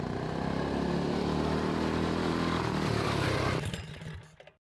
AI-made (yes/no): no